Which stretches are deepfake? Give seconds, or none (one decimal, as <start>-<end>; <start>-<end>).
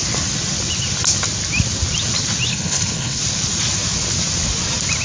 2.5-3.2